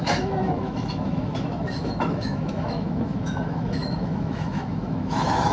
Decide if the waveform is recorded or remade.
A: remade